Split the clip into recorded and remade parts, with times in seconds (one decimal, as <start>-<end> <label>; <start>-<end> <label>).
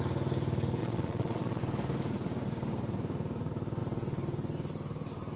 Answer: 0.0-0.8 recorded; 0.8-1.6 remade; 1.6-5.4 recorded